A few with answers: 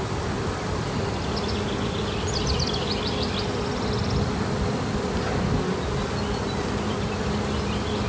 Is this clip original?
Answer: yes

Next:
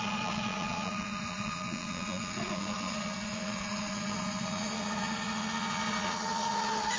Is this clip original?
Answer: no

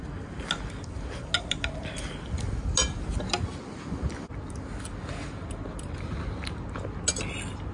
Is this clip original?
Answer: yes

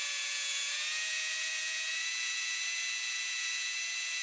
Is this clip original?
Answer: no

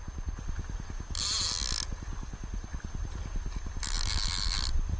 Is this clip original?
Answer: yes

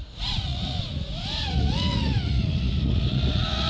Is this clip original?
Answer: no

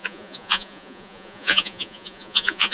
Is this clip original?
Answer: no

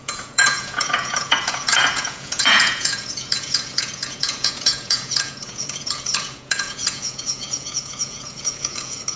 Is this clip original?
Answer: no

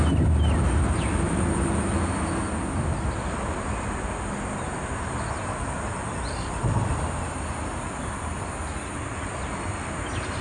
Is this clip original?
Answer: yes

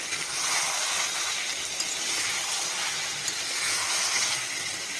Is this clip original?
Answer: yes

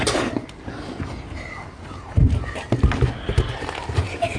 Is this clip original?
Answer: yes